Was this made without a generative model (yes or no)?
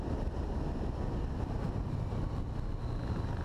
yes